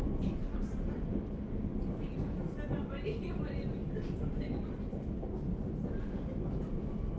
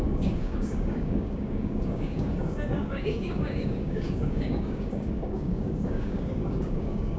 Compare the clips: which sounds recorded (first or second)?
first